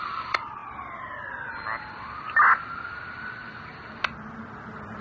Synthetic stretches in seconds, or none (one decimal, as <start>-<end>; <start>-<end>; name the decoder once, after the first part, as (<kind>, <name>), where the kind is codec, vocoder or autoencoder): none